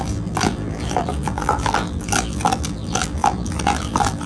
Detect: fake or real fake